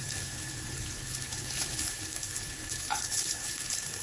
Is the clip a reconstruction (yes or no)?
yes